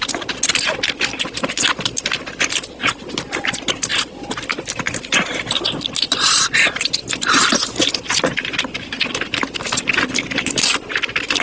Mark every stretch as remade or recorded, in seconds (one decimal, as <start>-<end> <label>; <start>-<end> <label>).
0.0-11.4 recorded